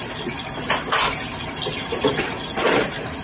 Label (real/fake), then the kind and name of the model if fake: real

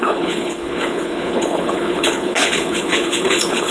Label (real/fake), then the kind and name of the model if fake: fake, codec, HILCodec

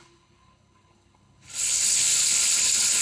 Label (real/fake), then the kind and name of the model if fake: fake, codec, HILCodec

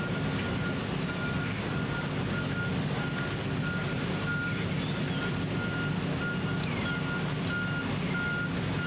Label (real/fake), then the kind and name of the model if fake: real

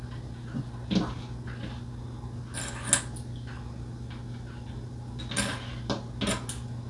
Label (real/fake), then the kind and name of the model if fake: real